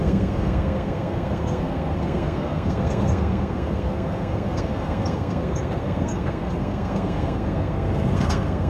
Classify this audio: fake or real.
fake